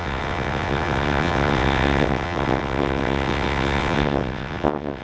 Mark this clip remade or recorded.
remade